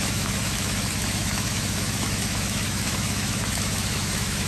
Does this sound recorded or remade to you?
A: remade